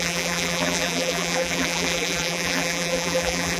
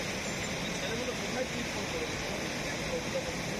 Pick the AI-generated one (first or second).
first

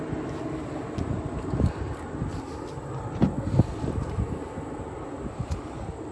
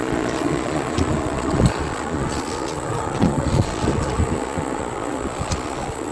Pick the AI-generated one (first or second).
second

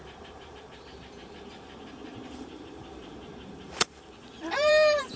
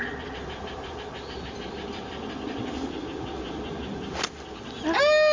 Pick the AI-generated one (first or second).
first